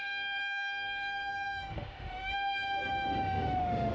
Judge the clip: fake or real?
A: fake